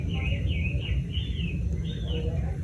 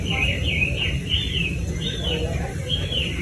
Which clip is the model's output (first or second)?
second